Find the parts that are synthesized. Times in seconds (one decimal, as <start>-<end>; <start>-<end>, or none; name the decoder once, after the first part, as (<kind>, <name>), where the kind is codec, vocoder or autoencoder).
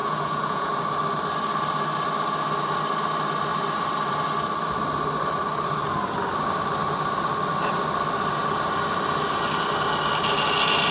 0.0-0.7 (vocoder, Vocos)